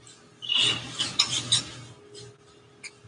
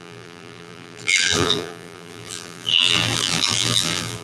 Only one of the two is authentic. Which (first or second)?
first